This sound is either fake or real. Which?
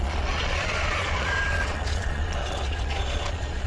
fake